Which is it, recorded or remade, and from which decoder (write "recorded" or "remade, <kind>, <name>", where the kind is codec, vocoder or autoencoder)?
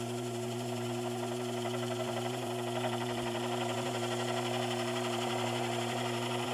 remade, vocoder, BigVGAN v2